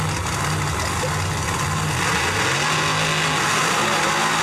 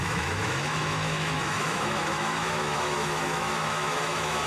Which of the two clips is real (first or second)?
first